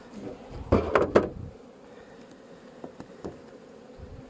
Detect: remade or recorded recorded